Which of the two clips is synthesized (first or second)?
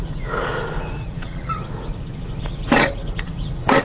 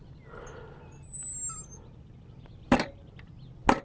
first